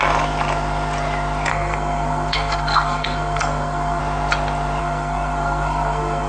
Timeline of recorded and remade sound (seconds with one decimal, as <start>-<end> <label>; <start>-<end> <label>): 0.0-1.5 recorded; 1.5-4.0 remade; 4.0-4.8 recorded; 4.8-6.3 remade